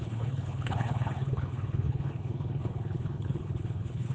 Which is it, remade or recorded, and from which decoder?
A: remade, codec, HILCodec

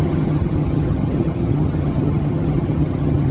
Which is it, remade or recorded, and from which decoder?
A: remade, vocoder, HiFi-GAN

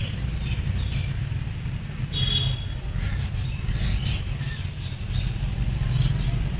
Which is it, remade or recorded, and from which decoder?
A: recorded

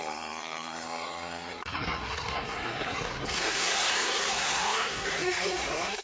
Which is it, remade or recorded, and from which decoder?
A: remade, codec, SNAC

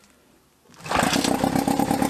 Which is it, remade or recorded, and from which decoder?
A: recorded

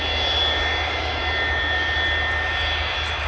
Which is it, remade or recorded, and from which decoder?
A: recorded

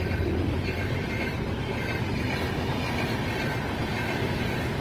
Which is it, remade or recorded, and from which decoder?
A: recorded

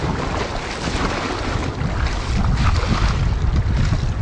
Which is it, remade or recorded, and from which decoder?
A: recorded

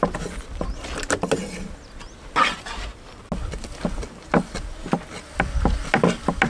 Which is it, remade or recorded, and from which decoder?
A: recorded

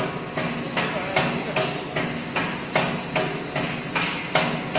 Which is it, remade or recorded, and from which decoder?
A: recorded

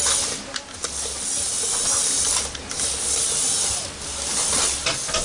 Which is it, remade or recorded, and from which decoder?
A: recorded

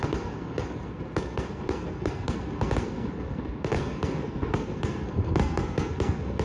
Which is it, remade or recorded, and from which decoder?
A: remade, codec, SNAC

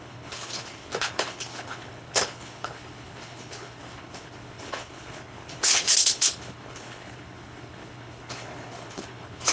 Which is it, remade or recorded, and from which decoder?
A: remade, codec, HILCodec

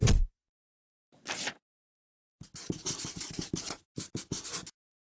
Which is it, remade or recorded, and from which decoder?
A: recorded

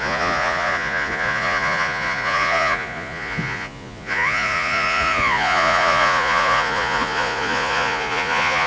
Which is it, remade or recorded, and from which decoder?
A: remade, vocoder, Vocos